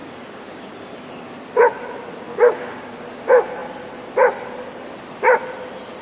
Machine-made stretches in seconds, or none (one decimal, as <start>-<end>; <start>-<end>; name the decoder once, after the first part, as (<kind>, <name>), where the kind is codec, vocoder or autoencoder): 0.0-0.7 (codec, DAC); 2.3-2.9